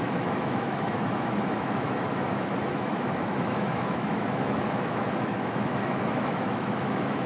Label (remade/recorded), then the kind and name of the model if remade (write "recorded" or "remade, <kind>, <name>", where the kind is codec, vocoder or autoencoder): remade, autoencoder, DAC-VAE